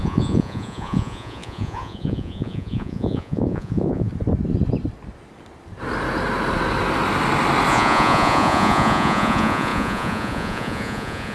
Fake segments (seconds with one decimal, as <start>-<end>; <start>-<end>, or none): 0.0-4.1; 7.7-11.3